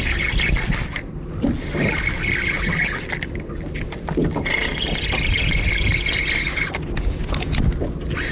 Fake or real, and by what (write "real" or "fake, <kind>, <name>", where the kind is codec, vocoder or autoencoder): real